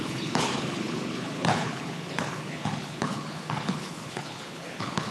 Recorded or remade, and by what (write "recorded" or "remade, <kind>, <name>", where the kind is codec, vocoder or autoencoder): remade, codec, HILCodec